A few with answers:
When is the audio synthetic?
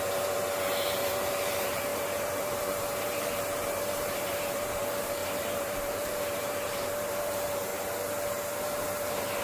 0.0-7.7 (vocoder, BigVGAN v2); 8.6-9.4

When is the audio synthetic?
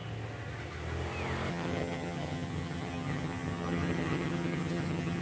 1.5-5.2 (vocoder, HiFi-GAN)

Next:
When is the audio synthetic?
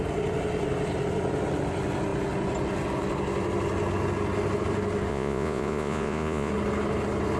5.1-6.5 (vocoder, Vocos)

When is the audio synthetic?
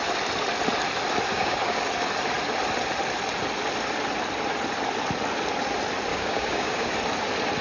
1.3-1.8 (codec, DAC); 6.1-6.9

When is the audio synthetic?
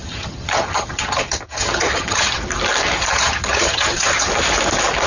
0.0-2.4 (vocoder, HiFi-GAN); 3.1-4.3